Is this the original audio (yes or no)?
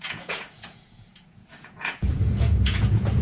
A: no